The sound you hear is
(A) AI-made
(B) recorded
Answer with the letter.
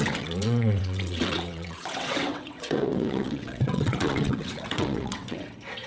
A